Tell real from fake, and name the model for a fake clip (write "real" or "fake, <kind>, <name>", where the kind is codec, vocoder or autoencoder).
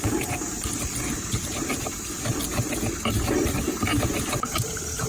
real